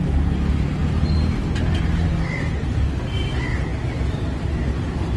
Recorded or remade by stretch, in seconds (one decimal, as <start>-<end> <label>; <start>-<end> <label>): 0.0-5.2 recorded